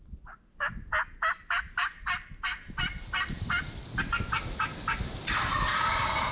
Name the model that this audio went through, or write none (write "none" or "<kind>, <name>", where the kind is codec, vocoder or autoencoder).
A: none